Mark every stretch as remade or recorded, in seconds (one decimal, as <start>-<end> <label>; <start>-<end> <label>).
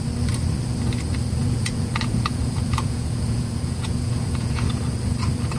0.0-1.4 recorded; 1.4-4.8 remade; 4.8-5.6 recorded